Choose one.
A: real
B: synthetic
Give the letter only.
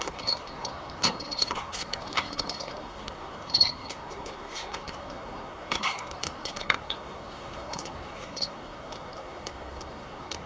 B